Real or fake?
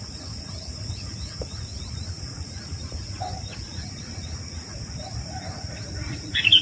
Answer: fake